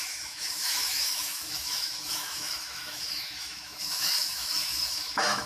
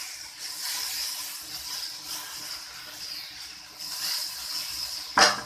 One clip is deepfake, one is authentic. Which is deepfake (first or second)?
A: first